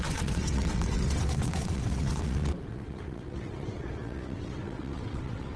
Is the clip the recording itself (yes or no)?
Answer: no